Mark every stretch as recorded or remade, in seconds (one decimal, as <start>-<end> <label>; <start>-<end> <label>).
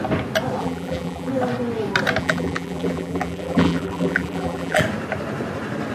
0.0-0.6 recorded; 0.6-1.3 remade; 1.3-2.2 recorded; 2.2-4.8 remade; 4.8-5.9 recorded